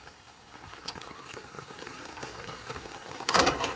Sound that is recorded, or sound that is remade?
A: remade